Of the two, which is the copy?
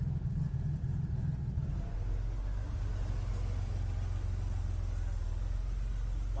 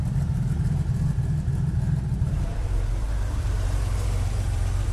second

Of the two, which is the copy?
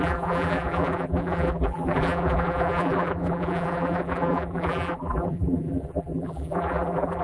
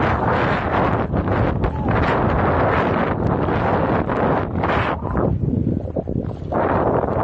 first